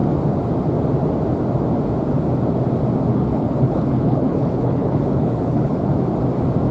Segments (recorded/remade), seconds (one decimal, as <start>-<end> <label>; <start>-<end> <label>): 0.0-3.1 recorded; 3.1-5.9 remade; 5.9-6.7 recorded